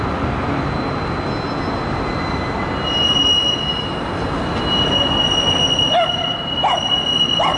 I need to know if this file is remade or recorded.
recorded